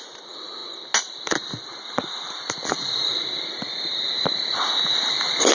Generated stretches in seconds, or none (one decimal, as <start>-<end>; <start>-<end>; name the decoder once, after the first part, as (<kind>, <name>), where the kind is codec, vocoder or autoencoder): none